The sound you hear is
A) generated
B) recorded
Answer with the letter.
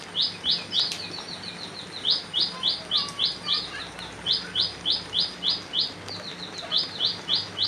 B